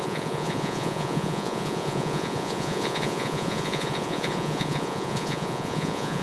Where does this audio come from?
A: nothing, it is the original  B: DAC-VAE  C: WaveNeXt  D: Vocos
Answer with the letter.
D